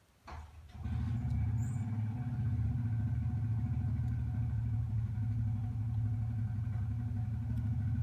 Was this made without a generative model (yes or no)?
yes